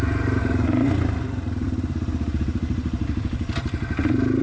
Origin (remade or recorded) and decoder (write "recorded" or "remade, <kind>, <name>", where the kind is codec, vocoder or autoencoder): recorded